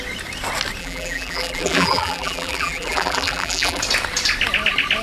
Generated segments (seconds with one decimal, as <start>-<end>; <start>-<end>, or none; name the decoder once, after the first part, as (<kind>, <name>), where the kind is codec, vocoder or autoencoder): 0.8-3.8 (vocoder, BigVGAN v2)